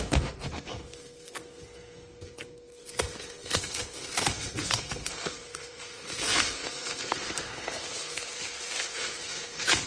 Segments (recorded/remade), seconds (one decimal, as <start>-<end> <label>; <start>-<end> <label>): 0.0-9.9 remade